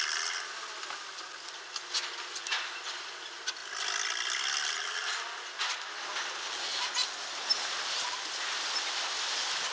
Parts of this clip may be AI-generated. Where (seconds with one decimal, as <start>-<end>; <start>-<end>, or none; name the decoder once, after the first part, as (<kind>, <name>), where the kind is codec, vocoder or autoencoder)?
none